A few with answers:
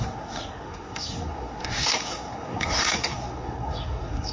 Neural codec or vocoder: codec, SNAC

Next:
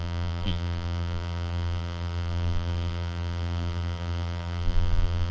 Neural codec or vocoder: vocoder, BigVGAN v2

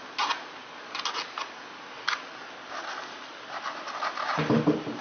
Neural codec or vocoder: none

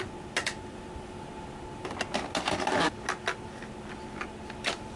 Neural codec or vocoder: none